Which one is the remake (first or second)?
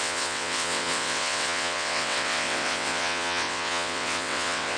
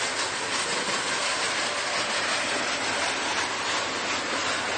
first